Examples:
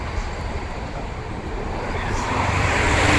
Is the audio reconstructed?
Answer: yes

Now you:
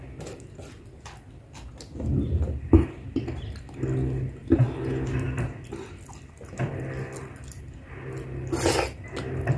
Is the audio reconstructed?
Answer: no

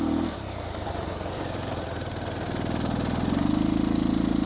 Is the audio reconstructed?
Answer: no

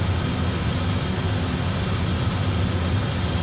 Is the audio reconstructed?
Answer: no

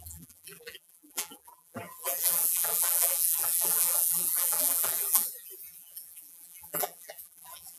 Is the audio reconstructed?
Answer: yes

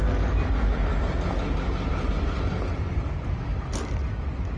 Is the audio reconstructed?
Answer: no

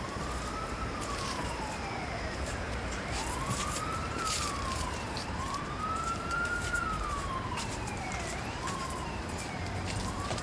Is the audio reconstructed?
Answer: yes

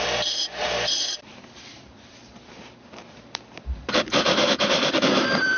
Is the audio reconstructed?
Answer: yes